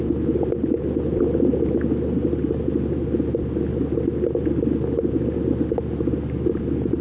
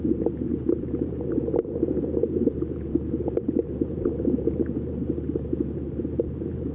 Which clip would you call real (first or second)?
first